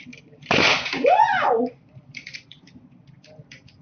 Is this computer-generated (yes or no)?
yes